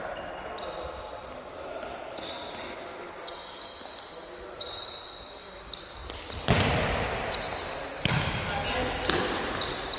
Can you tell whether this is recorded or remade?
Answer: recorded